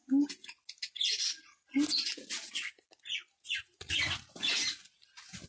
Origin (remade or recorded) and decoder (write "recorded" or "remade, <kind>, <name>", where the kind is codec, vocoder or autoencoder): recorded